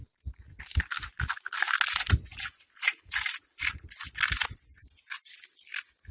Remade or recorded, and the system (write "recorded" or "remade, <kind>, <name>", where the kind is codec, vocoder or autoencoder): recorded